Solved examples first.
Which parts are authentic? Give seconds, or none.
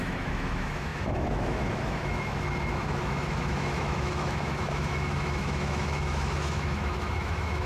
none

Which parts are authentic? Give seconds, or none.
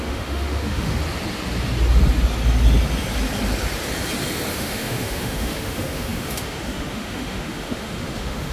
1.0-4.5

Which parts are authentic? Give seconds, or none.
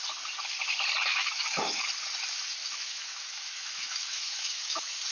0.0-1.1; 1.8-2.6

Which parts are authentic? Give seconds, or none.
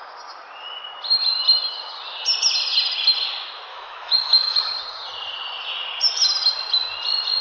0.0-3.7; 4.6-7.4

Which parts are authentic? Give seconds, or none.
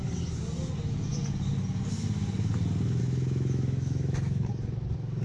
0.0-3.0; 4.5-5.2